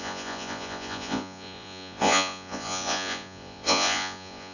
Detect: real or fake fake